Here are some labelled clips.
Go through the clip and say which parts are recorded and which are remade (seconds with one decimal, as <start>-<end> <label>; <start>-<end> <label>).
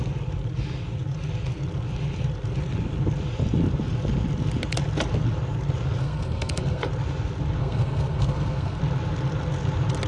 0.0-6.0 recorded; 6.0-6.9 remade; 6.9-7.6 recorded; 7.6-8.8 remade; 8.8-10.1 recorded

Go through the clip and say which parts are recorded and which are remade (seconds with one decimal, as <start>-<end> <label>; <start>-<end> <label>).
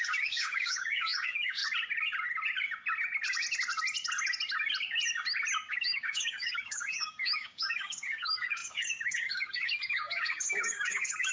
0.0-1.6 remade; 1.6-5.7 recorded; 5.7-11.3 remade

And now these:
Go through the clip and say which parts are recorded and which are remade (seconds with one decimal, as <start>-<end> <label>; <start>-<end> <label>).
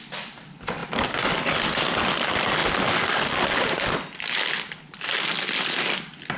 0.0-6.4 recorded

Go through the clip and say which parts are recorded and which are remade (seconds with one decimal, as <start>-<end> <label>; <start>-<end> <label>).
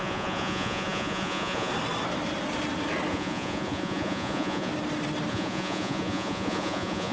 0.0-1.7 remade; 1.7-3.1 recorded; 3.1-4.7 remade; 4.7-5.3 recorded; 5.3-7.1 remade